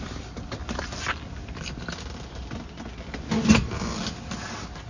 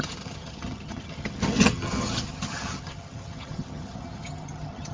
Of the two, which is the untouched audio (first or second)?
first